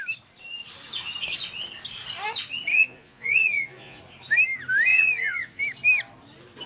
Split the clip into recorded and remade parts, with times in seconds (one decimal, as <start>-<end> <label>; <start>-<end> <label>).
0.0-2.7 recorded; 2.7-4.0 remade; 4.0-4.9 recorded; 4.9-5.6 remade; 5.6-6.7 recorded